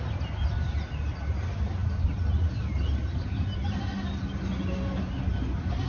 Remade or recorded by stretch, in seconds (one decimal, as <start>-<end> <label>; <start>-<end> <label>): 0.0-5.9 recorded